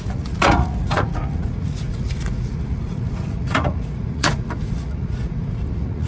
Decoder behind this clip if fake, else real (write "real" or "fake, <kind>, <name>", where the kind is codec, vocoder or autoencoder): fake, vocoder, Vocos